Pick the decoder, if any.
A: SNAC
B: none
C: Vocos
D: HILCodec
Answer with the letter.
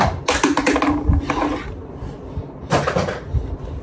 B